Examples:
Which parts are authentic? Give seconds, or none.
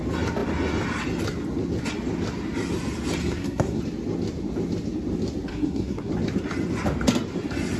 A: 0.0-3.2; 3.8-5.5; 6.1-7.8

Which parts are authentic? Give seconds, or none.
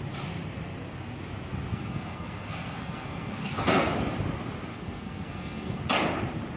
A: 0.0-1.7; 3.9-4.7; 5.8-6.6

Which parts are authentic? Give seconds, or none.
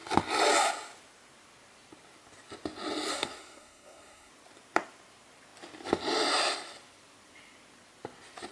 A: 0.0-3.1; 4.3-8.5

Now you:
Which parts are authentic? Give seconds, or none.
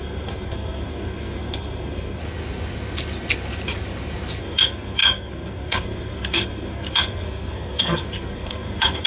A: 2.2-4.4